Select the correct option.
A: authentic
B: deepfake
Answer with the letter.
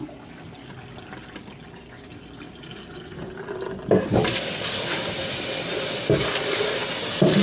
A